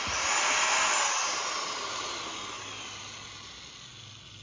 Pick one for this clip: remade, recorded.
recorded